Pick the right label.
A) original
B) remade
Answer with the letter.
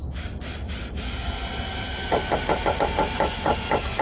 A